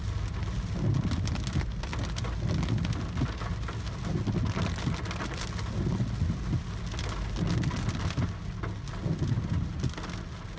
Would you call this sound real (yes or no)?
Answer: yes